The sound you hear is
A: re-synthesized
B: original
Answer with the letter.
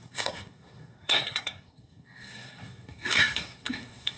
A